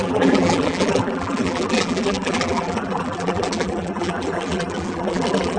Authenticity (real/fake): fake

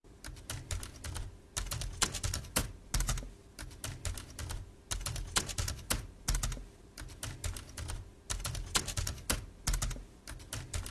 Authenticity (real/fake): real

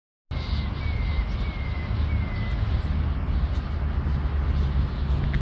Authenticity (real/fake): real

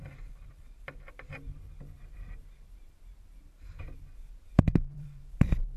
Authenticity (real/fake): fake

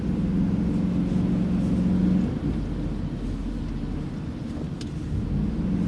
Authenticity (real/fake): real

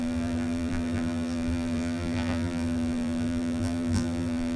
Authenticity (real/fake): fake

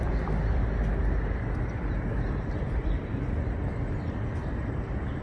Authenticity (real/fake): fake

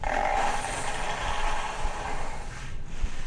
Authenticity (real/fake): fake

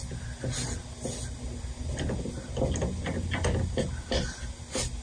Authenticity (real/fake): real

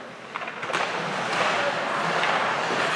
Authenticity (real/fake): real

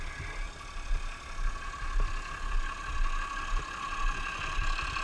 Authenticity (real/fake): real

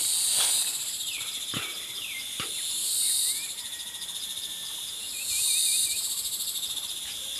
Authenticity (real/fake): fake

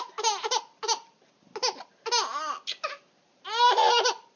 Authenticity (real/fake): real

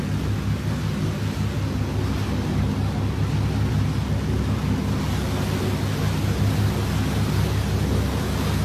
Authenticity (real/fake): real